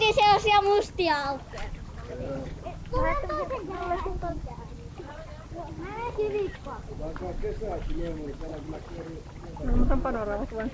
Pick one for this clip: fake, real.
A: real